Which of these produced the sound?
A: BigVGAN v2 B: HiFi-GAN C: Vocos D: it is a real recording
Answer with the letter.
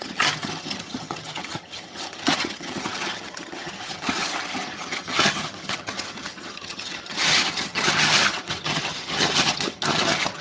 B